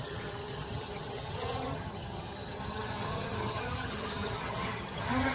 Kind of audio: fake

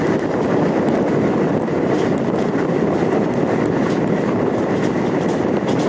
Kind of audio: fake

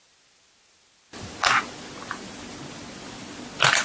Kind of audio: real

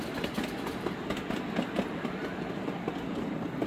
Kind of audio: real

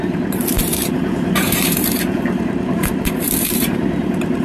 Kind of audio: fake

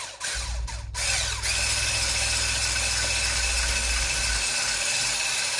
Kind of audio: real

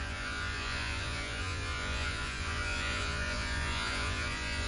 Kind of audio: fake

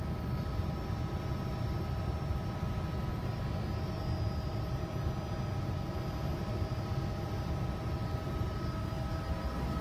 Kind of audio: real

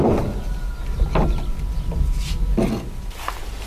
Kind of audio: real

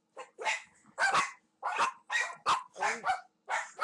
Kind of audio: real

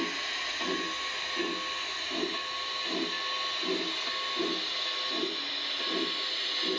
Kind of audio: real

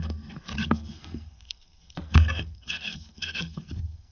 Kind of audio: fake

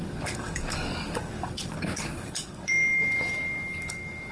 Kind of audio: fake